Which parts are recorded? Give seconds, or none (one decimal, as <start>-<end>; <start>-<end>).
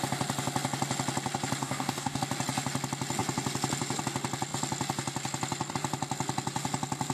0.0-1.6; 2.2-7.1